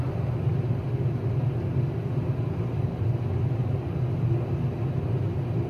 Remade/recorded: recorded